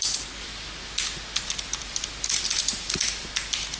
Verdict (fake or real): real